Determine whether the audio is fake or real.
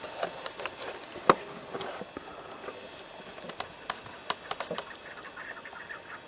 real